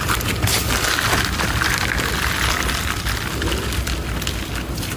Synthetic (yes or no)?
no